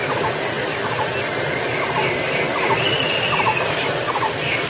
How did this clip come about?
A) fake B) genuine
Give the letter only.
A